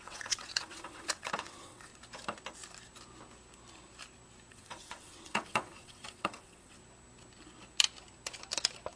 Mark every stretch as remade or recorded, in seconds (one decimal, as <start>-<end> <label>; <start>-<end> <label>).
0.0-1.9 remade; 1.9-4.5 recorded; 4.5-6.8 remade; 6.8-9.0 recorded